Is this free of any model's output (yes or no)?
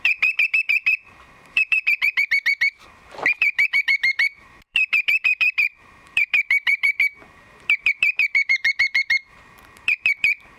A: no